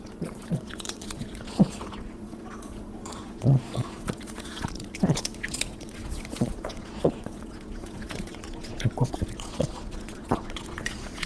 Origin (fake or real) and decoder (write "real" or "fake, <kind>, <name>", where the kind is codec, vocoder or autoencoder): fake, vocoder, Vocos